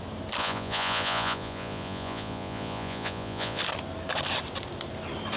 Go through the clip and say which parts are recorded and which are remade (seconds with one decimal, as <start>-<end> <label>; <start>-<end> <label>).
0.0-0.4 recorded; 0.4-3.6 remade; 3.6-5.4 recorded